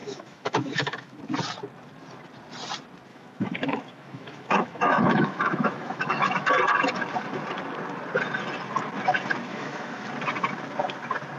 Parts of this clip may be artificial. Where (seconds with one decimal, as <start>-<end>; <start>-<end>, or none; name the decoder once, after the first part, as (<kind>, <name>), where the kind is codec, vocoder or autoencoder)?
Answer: 0.0-1.2 (autoencoder, DAC-VAE); 3.1-6.5; 9.5-10.1